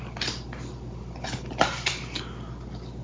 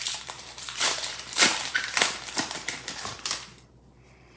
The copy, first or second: second